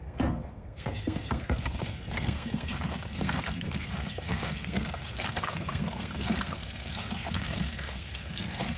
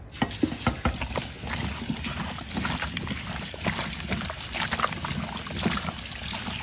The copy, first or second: first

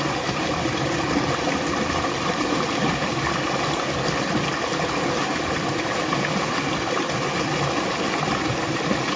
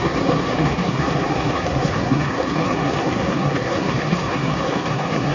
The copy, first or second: second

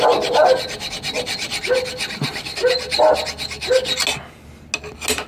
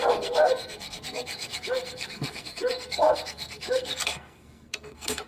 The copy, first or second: second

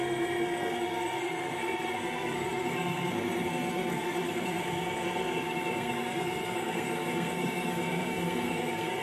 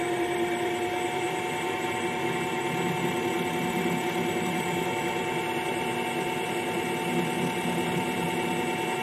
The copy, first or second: first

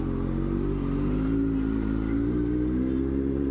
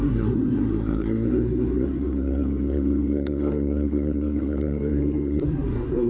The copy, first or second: second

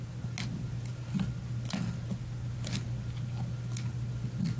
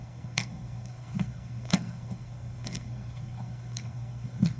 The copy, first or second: second